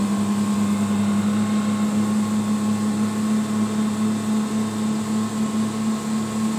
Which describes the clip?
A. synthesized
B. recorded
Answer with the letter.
B